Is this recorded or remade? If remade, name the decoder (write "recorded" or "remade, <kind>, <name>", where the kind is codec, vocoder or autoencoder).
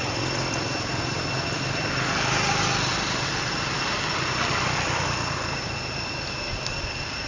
recorded